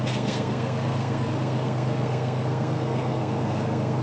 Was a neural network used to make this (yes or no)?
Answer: yes